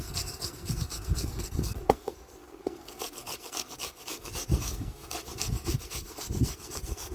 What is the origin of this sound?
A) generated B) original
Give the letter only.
A